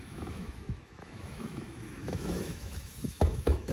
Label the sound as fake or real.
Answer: fake